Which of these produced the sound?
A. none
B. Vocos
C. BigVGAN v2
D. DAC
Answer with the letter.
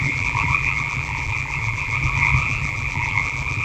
C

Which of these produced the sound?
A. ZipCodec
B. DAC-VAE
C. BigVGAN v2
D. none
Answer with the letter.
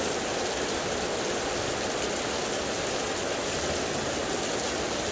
D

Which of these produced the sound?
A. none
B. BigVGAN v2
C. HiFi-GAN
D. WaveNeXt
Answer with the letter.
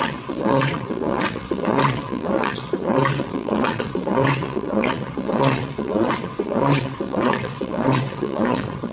D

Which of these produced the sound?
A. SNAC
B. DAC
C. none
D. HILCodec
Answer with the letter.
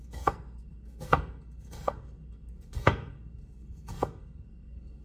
A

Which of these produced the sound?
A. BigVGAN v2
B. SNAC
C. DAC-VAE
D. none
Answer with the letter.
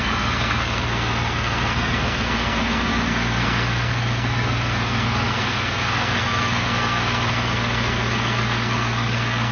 B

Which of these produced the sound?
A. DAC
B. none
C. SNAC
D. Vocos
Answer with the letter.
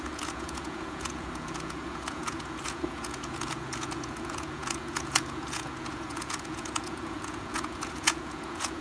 D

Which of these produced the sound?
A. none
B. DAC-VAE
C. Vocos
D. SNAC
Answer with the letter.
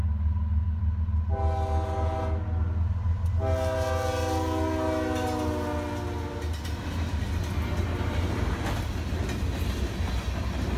A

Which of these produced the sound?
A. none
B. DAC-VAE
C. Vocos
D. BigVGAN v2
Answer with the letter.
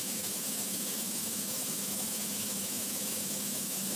B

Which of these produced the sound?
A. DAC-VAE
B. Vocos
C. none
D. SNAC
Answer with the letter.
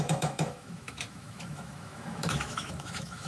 A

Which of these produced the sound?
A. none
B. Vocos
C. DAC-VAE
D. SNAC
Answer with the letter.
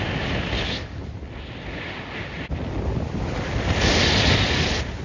A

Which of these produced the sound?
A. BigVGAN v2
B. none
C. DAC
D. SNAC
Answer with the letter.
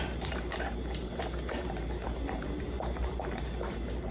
A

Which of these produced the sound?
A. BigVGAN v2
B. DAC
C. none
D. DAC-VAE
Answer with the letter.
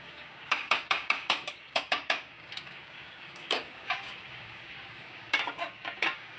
B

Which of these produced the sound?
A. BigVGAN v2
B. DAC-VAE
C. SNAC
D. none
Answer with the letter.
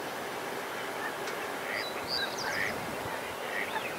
D